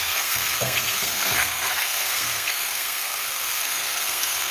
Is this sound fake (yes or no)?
yes